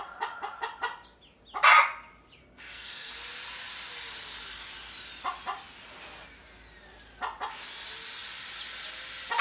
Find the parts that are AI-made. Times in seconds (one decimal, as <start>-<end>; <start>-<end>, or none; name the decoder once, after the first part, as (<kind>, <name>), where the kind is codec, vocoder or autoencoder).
2.4-3.1 (codec, SNAC)